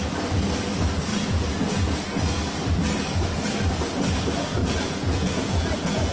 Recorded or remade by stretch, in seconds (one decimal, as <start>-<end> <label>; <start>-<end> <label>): 0.0-1.1 recorded; 1.1-1.9 remade; 1.9-4.6 recorded; 4.6-6.1 remade